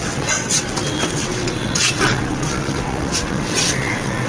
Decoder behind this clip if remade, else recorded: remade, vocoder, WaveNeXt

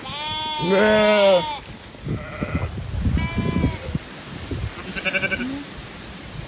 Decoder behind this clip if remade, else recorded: recorded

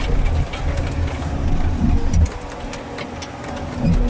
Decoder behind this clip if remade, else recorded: recorded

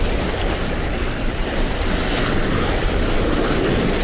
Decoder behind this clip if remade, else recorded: recorded